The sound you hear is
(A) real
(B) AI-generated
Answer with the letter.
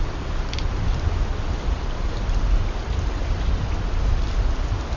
A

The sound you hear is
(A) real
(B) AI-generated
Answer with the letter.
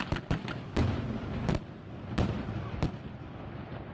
A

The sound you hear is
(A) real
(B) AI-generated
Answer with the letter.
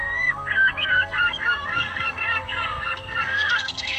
B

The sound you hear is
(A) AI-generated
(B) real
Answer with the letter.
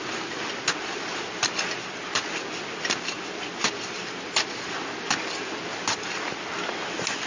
B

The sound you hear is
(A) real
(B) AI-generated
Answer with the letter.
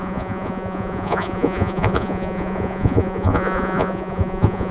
B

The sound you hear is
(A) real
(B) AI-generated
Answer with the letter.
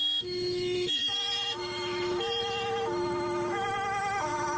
B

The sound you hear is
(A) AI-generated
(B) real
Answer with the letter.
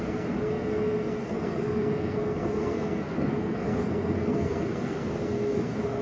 A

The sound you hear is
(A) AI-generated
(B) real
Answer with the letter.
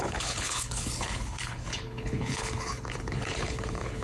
A